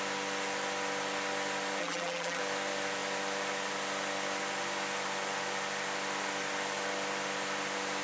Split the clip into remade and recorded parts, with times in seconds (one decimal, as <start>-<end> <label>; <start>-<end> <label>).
0.0-1.8 recorded; 1.8-2.4 remade; 2.4-8.0 recorded